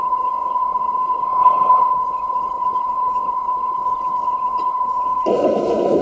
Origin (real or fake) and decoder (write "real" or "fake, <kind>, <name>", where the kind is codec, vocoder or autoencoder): fake, codec, HILCodec